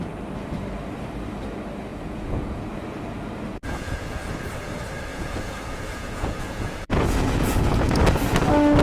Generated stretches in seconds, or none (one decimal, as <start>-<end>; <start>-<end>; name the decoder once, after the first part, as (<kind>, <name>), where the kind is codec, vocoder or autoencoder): 1.9-2.7 (vocoder, Vocos); 3.5-4.3; 5.1-8.0